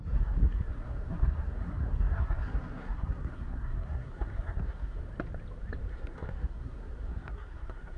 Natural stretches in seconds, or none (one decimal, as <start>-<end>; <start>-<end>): 5.0-5.9